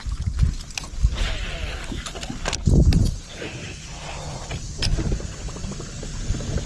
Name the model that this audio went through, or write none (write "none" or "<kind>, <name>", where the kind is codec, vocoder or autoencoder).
none